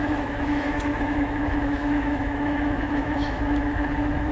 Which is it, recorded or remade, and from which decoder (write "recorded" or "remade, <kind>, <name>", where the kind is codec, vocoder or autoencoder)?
remade, autoencoder, DAC-VAE